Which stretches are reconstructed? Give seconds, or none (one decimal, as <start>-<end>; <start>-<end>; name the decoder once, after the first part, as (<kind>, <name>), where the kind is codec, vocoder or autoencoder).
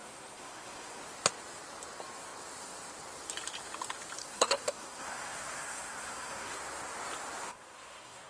0.0-1.0 (codec, SNAC); 4.2-6.6; 7.5-8.3